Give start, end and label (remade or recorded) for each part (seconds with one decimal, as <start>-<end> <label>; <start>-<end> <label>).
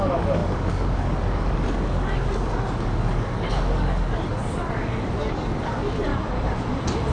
0.0-6.1 remade; 6.1-7.1 recorded